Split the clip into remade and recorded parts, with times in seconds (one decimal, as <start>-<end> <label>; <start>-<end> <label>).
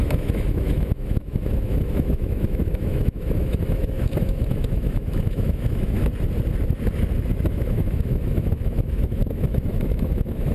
0.0-6.0 remade; 6.0-7.5 recorded; 7.5-10.5 remade